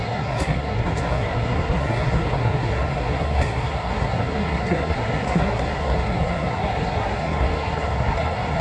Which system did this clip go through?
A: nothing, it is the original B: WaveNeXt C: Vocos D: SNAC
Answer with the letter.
D